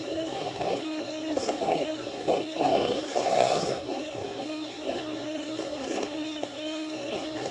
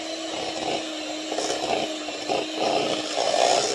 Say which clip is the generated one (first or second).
first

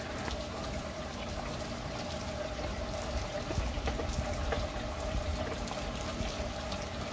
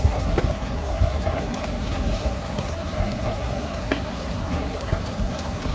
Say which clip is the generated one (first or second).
second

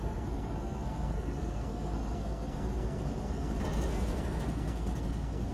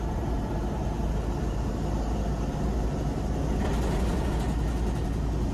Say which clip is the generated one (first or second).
first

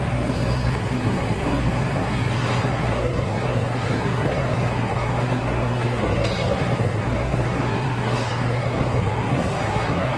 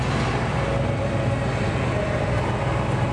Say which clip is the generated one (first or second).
first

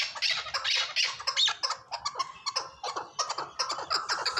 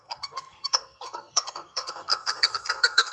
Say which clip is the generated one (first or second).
second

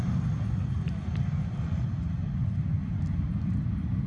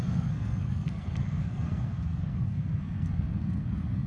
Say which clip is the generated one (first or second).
second